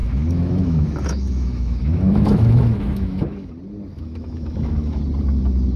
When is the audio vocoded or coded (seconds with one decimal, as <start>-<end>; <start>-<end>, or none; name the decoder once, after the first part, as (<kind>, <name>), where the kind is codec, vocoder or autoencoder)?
0.0-3.5 (autoencoder, DAC-VAE); 3.9-5.0